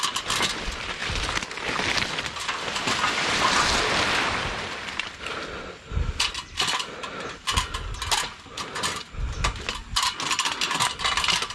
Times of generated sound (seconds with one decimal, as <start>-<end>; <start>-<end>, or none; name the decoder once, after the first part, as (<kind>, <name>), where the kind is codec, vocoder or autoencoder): none